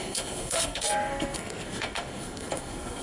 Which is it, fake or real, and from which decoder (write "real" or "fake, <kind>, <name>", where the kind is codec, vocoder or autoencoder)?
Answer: fake, codec, SNAC